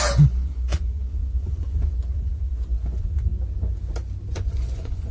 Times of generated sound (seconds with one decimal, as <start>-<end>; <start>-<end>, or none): 0.0-3.3; 4.3-5.1